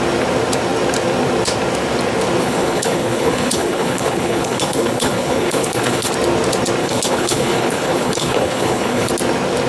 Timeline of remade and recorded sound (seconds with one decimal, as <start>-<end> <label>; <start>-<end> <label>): 0.0-2.4 recorded; 2.4-6.1 remade; 6.1-6.8 recorded; 6.8-9.1 remade; 9.1-9.7 recorded